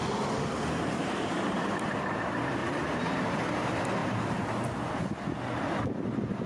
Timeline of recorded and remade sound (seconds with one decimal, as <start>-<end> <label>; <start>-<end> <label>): 0.0-2.6 remade; 2.6-3.3 recorded; 3.3-4.0 remade; 4.0-6.5 recorded